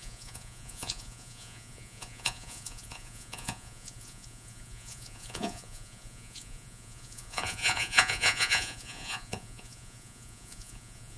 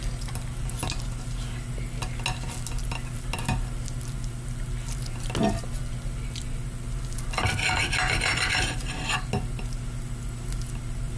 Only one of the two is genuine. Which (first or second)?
second